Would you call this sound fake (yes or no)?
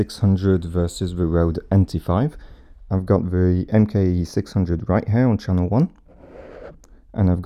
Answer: no